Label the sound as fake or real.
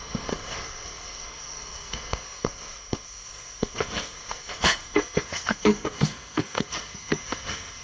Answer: fake